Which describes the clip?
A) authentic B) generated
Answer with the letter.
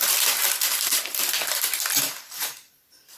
A